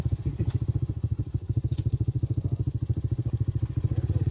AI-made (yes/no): yes